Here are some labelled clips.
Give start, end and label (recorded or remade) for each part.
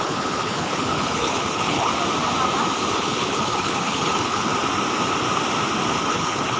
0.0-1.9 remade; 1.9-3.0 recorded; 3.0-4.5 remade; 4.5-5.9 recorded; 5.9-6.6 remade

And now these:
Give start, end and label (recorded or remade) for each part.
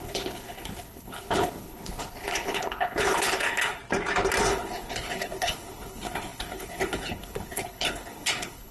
0.0-3.8 remade; 3.8-4.5 recorded; 4.5-8.7 remade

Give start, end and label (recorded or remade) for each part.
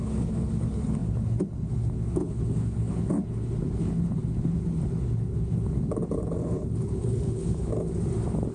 0.0-7.7 remade; 7.7-8.5 recorded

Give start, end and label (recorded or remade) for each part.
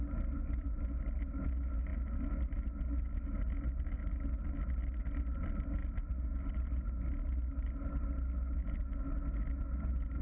0.0-10.2 recorded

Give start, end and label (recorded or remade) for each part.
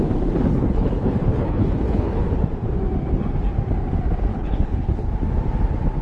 0.0-0.5 recorded; 0.5-2.2 remade; 2.2-4.3 recorded; 4.3-5.1 remade; 5.1-6.0 recorded